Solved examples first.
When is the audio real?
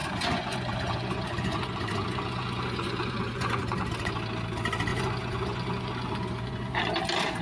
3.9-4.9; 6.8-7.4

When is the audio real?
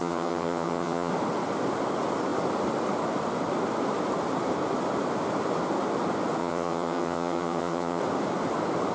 1.1-6.4; 8.0-8.9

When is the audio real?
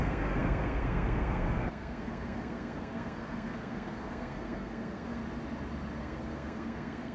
5.2-6.0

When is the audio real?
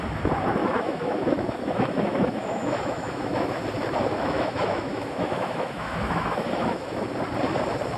0.0-0.6; 3.6-4.1; 7.0-8.0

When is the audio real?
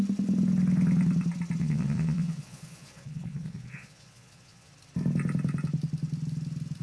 0.0-1.6; 4.7-6.8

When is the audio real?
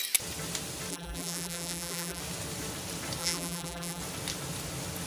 0.0-0.9; 2.2-3.2; 4.0-5.1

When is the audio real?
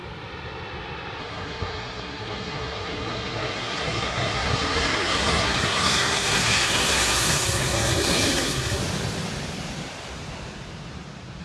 0.0-1.2; 8.8-11.4